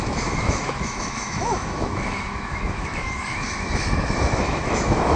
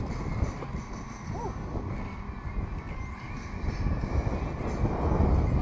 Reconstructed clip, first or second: first